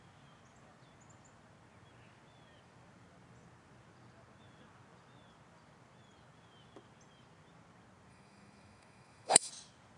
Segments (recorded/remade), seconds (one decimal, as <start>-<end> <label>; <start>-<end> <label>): 0.0-8.1 recorded; 8.1-9.5 remade; 9.5-10.0 recorded